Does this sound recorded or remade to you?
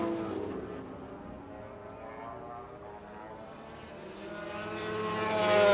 recorded